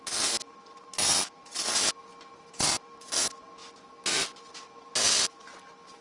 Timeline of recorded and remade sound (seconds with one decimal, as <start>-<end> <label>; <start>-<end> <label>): 0.0-6.0 recorded